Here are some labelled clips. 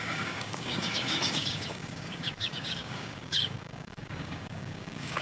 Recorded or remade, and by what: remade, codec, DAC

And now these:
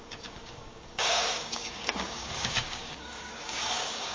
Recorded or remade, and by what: remade, codec, DAC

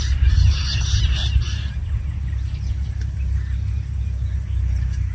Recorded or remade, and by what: recorded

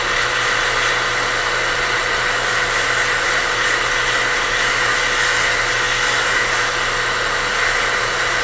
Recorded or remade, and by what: recorded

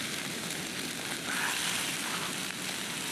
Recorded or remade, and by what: recorded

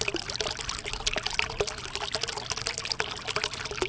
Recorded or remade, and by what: recorded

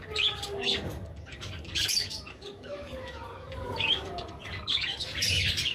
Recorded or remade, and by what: remade, codec, DAC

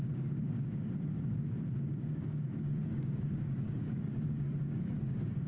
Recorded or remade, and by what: remade, codec, DAC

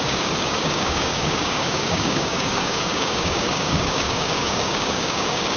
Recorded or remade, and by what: remade, codec, DAC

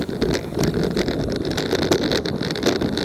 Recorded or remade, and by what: recorded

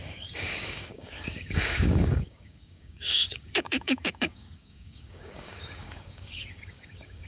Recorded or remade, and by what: remade, codec, DAC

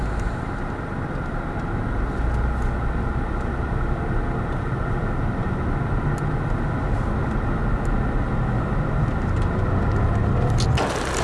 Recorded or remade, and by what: recorded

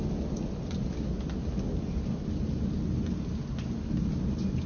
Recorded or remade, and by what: recorded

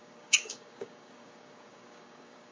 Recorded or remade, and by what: remade, codec, DAC